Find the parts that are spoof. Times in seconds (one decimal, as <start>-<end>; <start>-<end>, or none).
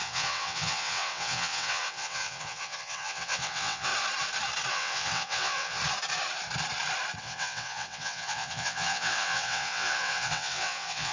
0.0-3.9; 4.7-5.8; 7.2-11.1